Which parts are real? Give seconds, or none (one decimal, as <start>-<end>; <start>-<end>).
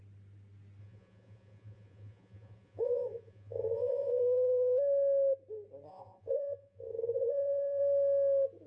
0.0-0.8; 4.2-5.9; 7.8-8.7